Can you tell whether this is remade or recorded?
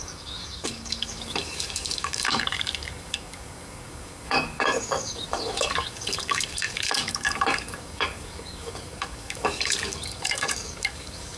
remade